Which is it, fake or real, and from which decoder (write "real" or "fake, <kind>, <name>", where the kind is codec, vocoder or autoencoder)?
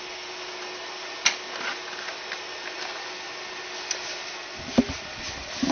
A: real